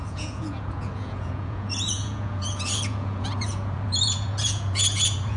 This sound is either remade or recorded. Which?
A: remade